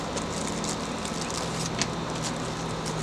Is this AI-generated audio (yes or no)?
no